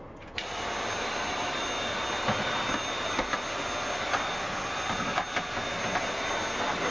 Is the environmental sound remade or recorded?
recorded